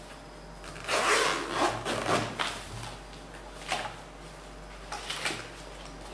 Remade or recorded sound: recorded